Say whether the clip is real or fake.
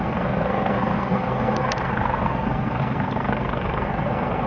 fake